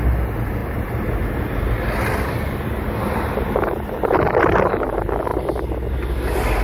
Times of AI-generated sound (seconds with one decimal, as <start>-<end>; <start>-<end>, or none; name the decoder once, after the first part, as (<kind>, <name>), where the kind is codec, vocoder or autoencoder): none